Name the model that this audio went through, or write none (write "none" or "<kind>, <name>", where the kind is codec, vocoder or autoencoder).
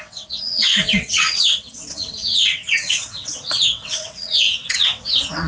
vocoder, WaveNeXt